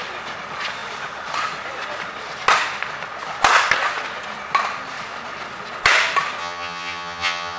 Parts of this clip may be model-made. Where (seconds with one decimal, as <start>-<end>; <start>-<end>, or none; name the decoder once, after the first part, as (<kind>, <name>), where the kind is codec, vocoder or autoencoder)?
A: 6.4-7.6 (vocoder, HiFi-GAN)